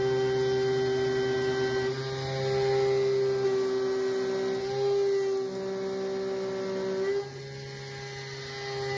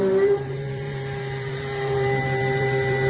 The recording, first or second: first